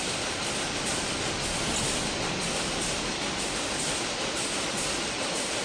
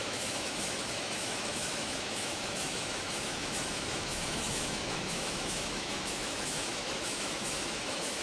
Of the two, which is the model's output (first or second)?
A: second